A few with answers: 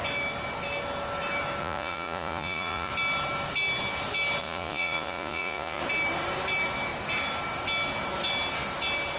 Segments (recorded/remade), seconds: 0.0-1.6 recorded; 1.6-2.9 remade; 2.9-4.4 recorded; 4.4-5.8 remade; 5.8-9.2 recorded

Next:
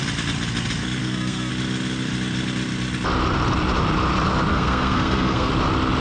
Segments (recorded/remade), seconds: 0.0-1.0 recorded; 1.0-1.5 remade; 1.5-4.5 recorded; 4.5-5.5 remade; 5.5-6.0 recorded

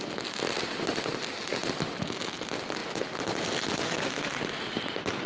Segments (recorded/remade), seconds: 0.0-5.3 recorded

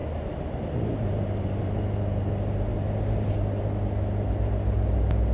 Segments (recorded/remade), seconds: 0.0-5.3 recorded

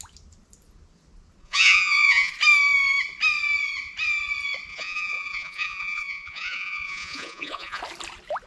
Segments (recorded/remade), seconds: 0.0-1.4 recorded; 1.4-2.3 remade; 2.3-4.7 recorded; 4.7-7.8 remade; 7.8-8.5 recorded